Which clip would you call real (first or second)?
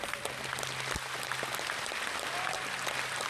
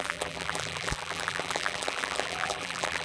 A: first